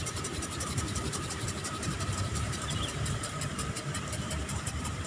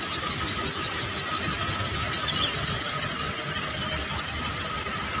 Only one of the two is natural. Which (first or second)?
second